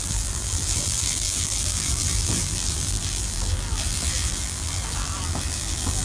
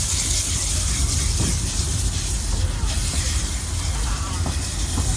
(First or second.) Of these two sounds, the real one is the second